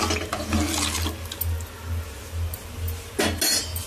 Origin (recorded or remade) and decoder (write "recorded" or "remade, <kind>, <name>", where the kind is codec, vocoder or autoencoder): recorded